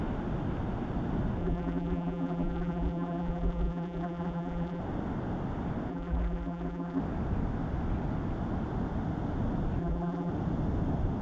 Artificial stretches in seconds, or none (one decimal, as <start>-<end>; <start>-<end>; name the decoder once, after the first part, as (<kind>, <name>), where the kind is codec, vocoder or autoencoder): 1.4-4.8 (vocoder, BigVGAN v2); 5.9-7.0; 9.8-10.3